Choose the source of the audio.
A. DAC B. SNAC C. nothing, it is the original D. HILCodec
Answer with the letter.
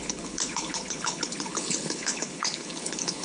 D